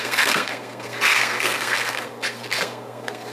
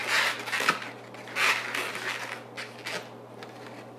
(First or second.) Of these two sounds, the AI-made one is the first